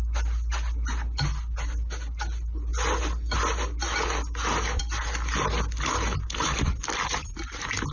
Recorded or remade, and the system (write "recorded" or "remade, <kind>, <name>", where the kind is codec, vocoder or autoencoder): recorded